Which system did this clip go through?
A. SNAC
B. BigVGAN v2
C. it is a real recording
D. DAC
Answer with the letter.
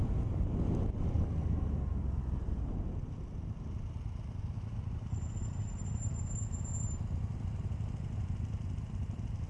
C